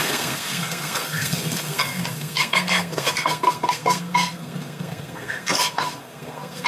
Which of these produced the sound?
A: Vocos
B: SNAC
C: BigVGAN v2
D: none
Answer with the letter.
B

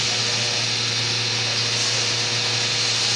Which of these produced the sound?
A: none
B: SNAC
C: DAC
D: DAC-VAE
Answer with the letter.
A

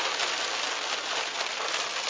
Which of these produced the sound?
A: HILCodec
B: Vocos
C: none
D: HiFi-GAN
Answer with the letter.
C